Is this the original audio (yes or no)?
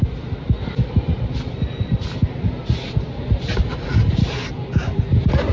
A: yes